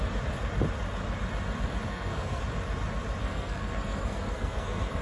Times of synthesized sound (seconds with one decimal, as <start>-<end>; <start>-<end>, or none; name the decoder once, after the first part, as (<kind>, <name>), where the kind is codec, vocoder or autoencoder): 1.9-2.4 (codec, SNAC); 3.2-5.0